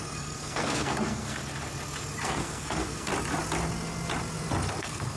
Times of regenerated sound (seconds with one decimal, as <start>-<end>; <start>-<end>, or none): 0.0-1.4; 2.2-3.1; 4.8-5.2